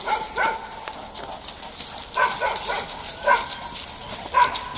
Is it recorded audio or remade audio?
recorded